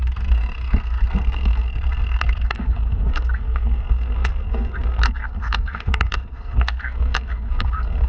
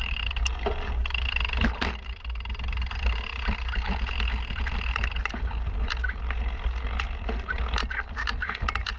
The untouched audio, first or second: second